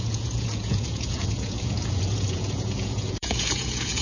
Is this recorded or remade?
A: remade